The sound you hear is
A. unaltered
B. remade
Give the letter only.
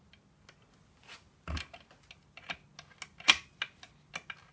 A